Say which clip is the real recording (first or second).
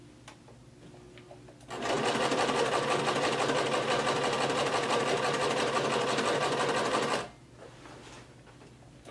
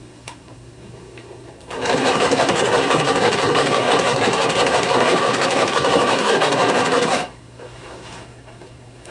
first